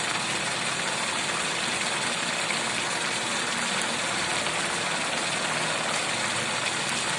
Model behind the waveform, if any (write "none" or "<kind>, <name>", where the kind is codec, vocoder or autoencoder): none